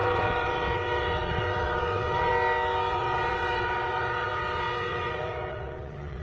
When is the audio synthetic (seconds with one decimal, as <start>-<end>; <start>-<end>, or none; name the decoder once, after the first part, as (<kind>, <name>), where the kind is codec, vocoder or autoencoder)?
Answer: 0.0-2.3 (vocoder, WaveNeXt); 2.9-6.2